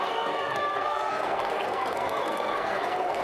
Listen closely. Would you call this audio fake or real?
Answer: fake